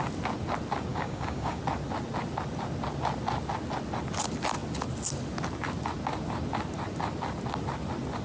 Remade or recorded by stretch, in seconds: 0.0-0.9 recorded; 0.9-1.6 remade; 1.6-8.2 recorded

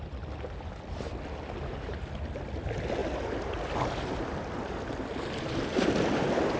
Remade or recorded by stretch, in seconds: 0.0-6.6 recorded

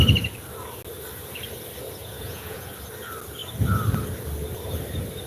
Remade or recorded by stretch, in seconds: 0.0-2.0 recorded; 2.0-2.7 remade; 2.7-5.3 recorded

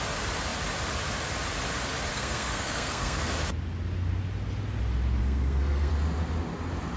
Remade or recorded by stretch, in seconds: 0.0-2.1 recorded; 2.1-3.3 remade; 3.3-5.2 recorded; 5.2-5.9 remade; 5.9-7.0 recorded